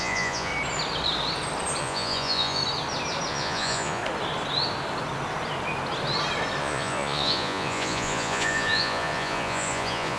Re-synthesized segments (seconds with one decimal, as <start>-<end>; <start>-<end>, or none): 0.0-0.5; 1.8-2.6; 3.3-4.0; 6.6-10.2